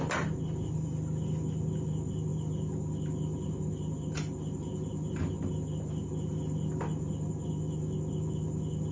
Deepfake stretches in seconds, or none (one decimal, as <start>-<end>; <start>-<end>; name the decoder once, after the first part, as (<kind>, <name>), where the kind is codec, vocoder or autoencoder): none